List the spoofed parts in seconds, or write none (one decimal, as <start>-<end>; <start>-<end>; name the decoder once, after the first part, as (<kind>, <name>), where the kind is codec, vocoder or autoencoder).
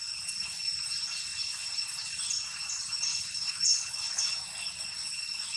3.1-4.2 (codec, HILCodec)